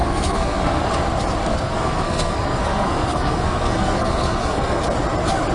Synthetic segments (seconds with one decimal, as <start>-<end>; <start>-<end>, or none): 0.0-0.8; 1.5-4.8